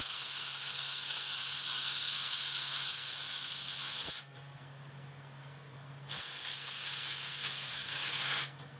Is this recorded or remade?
remade